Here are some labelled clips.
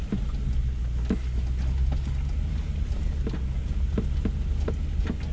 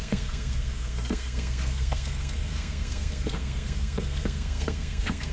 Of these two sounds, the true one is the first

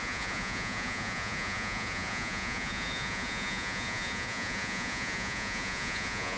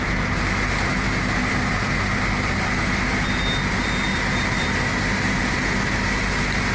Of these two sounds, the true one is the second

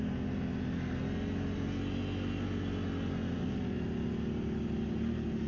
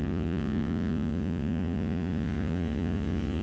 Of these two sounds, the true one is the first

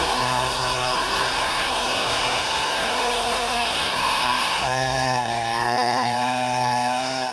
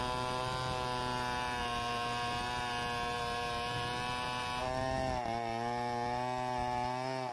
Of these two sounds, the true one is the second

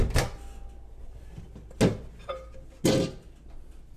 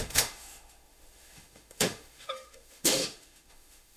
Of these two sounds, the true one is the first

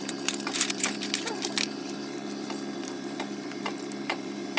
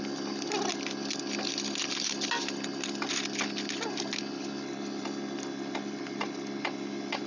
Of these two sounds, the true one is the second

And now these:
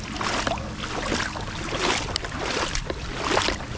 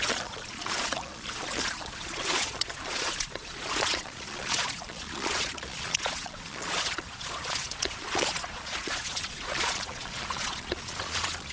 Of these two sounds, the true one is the first